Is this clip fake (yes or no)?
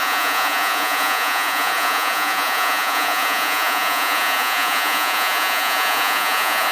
yes